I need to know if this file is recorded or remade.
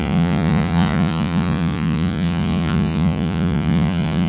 remade